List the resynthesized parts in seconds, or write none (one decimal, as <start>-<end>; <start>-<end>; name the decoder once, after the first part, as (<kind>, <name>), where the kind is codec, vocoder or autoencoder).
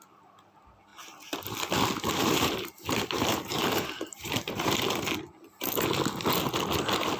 2.2-4.8 (vocoder, BigVGAN v2)